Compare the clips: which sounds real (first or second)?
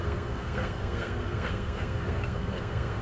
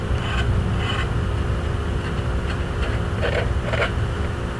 second